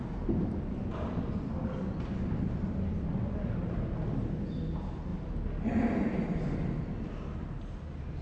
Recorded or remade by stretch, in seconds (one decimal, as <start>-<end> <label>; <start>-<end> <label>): 0.0-8.2 recorded